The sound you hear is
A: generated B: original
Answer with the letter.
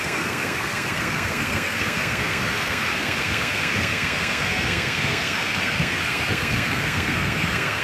A